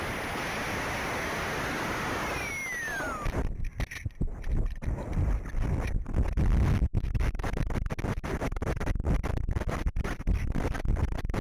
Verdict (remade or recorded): recorded